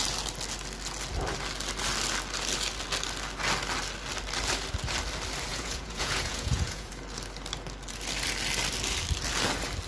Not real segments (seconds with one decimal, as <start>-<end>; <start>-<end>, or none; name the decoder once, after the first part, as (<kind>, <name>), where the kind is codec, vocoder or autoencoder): 5.5-6.9 (vocoder, Vocos)